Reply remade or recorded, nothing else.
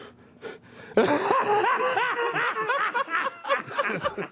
recorded